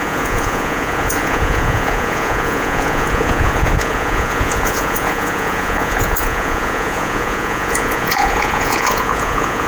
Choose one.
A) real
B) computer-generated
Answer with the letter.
B